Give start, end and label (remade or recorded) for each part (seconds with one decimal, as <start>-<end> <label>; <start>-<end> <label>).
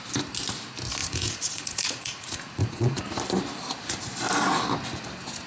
0.0-1.0 recorded; 1.0-3.0 remade; 3.0-5.5 recorded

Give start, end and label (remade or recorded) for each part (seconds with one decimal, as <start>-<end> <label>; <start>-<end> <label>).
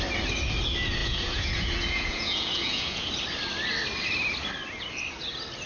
0.0-1.0 recorded; 1.0-3.1 remade; 3.1-5.7 recorded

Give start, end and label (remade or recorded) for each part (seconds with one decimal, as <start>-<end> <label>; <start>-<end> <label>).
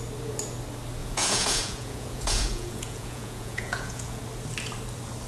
0.0-1.0 recorded; 1.0-4.2 remade; 4.2-5.3 recorded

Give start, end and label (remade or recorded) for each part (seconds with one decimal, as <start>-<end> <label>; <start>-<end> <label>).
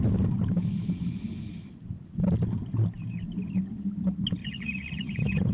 0.0-4.4 recorded; 4.4-5.5 remade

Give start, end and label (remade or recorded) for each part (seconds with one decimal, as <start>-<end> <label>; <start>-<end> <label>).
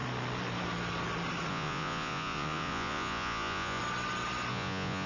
0.0-1.5 recorded; 1.5-3.8 remade; 3.8-4.5 recorded; 4.5-5.1 remade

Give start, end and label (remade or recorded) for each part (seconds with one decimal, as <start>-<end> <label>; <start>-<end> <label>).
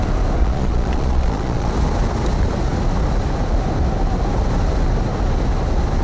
0.0-0.4 recorded; 0.4-1.7 remade; 1.7-6.0 recorded